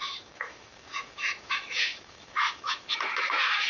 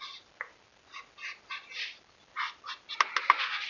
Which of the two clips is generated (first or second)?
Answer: first